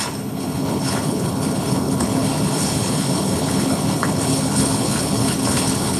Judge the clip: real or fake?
fake